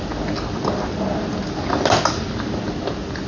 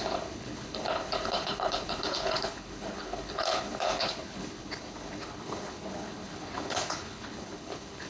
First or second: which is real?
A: first